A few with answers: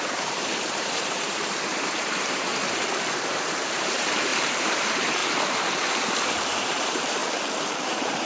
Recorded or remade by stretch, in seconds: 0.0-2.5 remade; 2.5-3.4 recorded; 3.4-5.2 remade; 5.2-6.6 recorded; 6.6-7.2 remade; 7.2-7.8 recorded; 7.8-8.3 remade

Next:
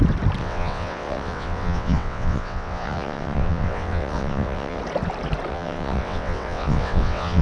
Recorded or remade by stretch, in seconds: 0.0-0.4 recorded; 0.4-4.8 remade; 4.8-5.5 recorded; 5.5-7.4 remade

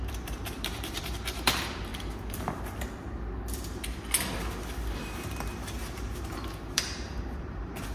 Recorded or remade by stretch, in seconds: 0.0-1.9 remade; 1.9-6.6 recorded; 6.6-7.9 remade

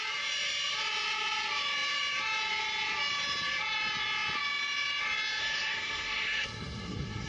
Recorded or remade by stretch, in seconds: 0.0-5.4 recorded; 5.4-7.3 remade

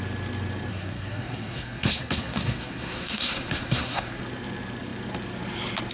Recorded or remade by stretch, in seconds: 0.0-0.7 recorded; 0.7-4.2 remade; 4.2-5.9 recorded

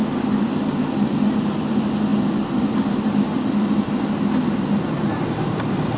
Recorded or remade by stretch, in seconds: 0.0-6.0 recorded

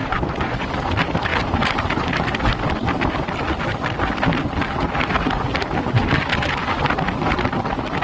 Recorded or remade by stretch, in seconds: 0.0-0.7 remade; 0.7-8.0 recorded

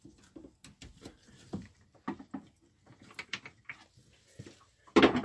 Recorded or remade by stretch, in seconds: 0.0-5.2 recorded